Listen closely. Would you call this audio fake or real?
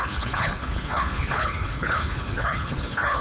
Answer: fake